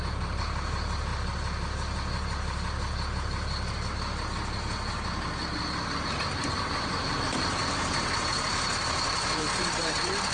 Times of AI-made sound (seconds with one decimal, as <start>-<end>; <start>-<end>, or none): 0.0-1.1; 6.0-10.3